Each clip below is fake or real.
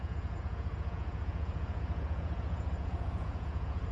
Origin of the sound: fake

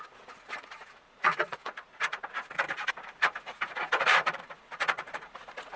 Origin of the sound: fake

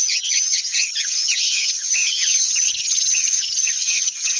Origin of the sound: fake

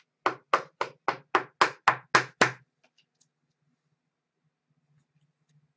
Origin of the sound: real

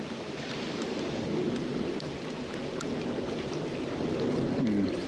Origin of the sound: fake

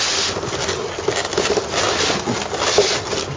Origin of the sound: real